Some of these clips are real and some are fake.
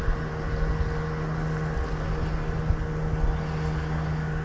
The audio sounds real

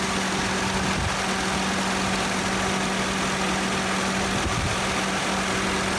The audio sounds real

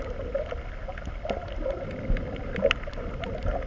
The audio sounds real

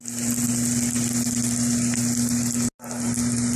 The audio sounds real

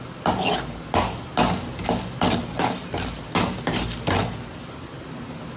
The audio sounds real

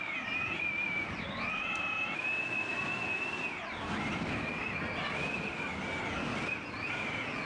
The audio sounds real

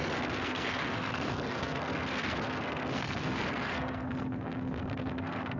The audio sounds fake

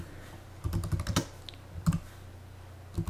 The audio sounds real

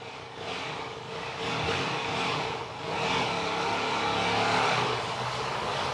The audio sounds fake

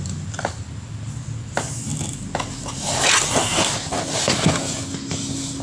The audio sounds real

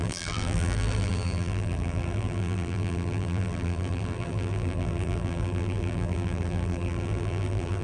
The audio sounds fake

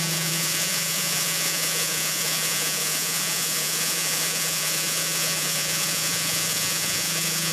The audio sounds fake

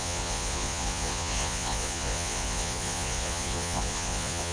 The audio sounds fake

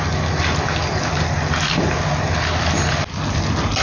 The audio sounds real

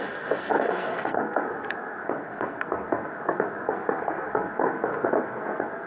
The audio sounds fake